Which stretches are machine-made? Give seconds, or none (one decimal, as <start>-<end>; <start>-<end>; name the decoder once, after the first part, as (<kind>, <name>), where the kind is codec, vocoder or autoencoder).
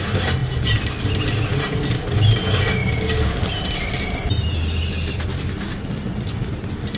none